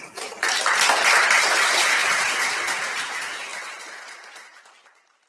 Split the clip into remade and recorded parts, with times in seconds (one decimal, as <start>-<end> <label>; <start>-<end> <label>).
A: 0.0-5.3 recorded